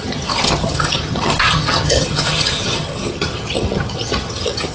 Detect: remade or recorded remade